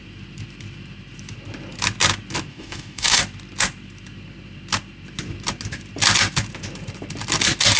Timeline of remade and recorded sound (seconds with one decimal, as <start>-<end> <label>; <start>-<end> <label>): 0.0-2.5 recorded; 2.5-3.2 remade; 3.2-7.8 recorded